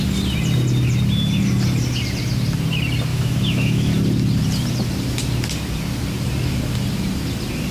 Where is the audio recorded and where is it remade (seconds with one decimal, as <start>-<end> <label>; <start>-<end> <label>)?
0.0-3.1 recorded; 3.1-3.9 remade; 3.9-7.7 recorded